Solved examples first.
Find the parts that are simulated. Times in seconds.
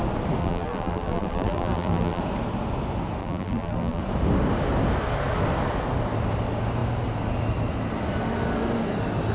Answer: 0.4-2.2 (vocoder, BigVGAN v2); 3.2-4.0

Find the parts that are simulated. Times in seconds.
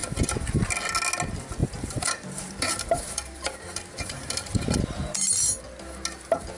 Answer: 1.6-5.6 (vocoder, BigVGAN v2)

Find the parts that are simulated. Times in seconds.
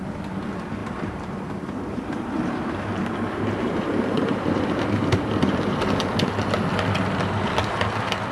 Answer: 0.8-5.8 (vocoder, BigVGAN v2)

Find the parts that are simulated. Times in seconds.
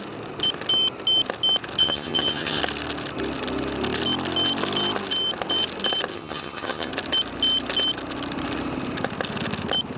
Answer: 1.8-2.6 (vocoder, HiFi-GAN); 6.1-6.9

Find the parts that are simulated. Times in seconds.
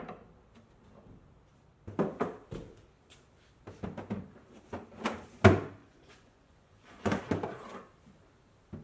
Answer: 5.8-7.2 (vocoder, Vocos)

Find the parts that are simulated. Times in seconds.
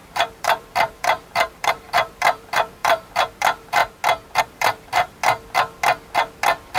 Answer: 0.0-3.8 (vocoder, BigVGAN v2); 4.4-5.2